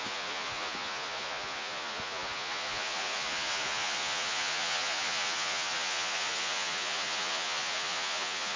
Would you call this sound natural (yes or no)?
no